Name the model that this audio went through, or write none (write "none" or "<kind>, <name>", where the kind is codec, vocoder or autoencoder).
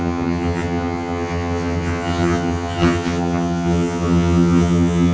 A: vocoder, HiFi-GAN